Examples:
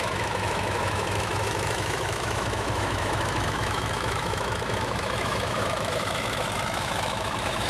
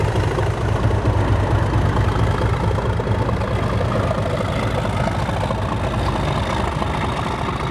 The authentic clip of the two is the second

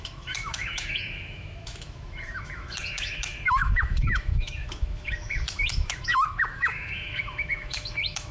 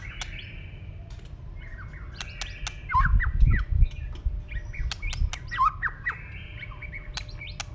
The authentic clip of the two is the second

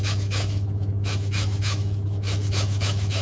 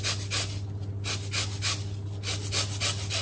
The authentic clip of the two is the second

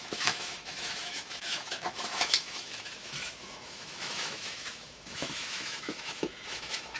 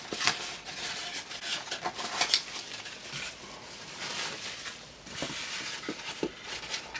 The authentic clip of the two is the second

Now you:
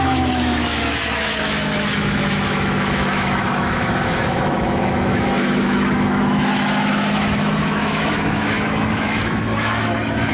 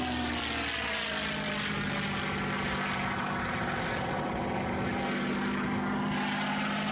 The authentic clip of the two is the second